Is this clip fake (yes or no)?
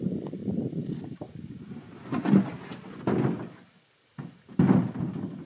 no